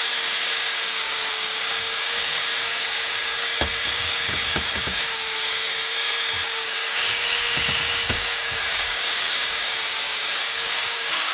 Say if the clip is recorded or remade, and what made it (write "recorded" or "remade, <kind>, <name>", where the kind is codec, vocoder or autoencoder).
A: remade, codec, DAC